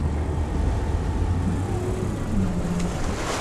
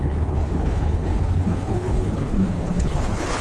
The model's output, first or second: second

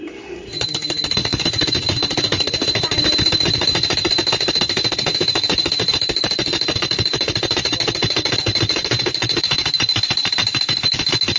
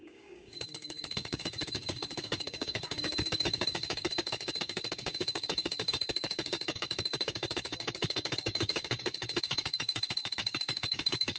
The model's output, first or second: second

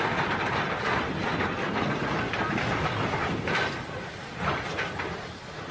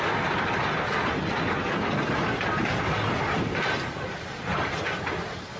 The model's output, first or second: first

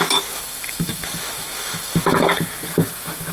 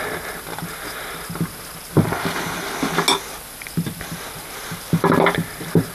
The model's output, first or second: first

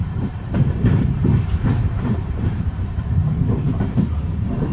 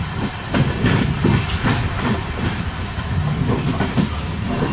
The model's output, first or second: first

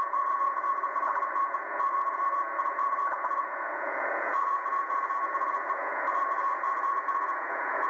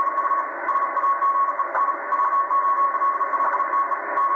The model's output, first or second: first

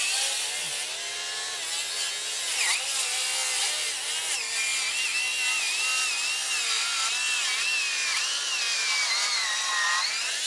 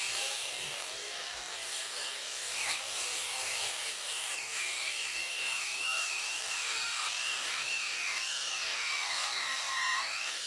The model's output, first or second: second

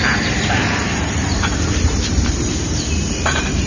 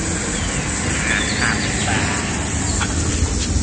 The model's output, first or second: first